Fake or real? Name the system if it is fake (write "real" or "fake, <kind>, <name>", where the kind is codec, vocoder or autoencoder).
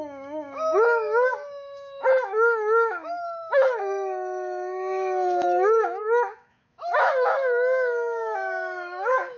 fake, autoencoder, DAC-VAE